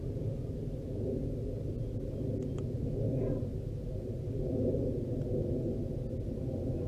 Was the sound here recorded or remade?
recorded